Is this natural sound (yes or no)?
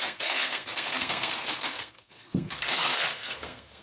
no